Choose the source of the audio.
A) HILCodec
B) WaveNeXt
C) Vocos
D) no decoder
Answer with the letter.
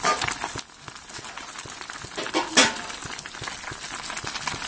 D